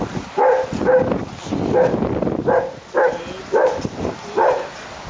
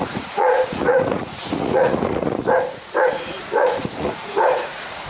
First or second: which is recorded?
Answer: first